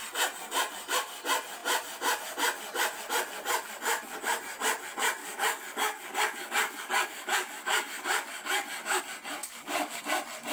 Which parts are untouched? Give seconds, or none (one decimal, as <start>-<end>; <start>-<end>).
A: 0.0-5.2; 9.0-9.4; 10.0-10.5